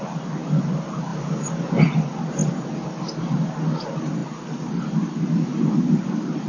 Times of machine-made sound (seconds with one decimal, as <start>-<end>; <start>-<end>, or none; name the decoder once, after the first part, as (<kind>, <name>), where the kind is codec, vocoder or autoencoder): none